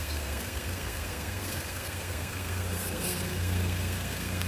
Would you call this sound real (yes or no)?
no